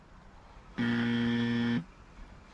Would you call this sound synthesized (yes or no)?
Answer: no